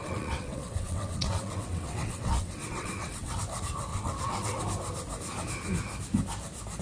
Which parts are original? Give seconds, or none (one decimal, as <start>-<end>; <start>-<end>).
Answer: 3.4-3.9; 4.6-6.8